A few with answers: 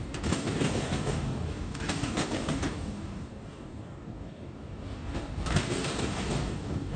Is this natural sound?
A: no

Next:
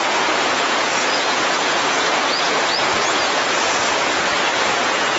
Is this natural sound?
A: no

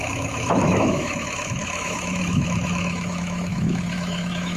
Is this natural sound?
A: no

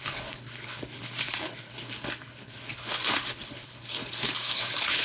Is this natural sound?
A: no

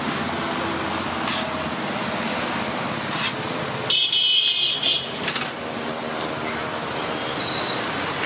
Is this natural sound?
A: yes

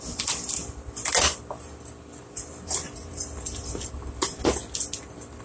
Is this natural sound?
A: yes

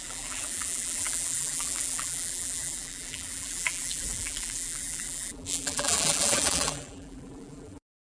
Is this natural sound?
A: no